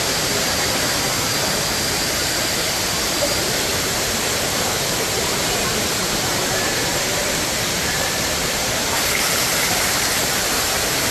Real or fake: fake